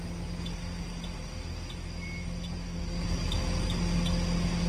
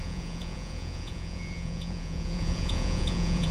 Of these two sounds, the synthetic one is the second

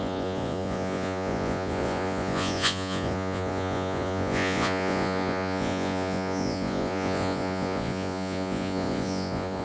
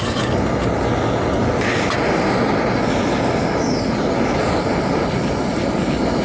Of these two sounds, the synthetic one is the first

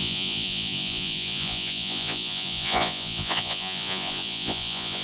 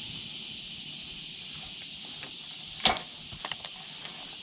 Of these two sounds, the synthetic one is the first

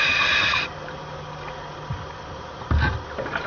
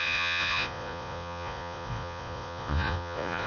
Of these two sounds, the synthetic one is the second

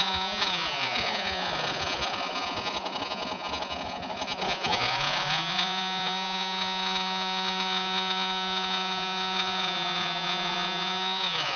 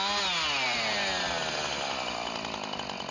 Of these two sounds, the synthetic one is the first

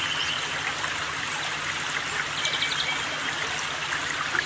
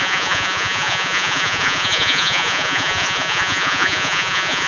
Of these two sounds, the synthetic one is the second